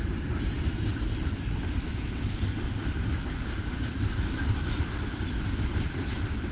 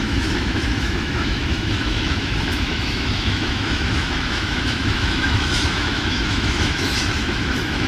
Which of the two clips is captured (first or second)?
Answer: first